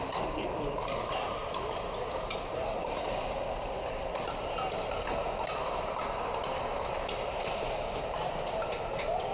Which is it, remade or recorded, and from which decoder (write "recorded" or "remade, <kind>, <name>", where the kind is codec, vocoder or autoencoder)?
recorded